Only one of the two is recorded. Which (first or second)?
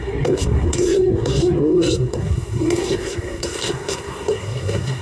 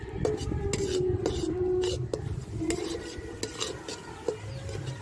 second